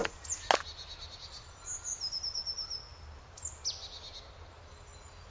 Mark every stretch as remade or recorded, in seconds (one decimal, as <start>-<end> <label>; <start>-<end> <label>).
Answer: 0.0-5.3 recorded